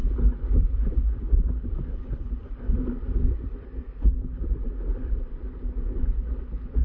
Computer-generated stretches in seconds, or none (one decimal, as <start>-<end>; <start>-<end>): none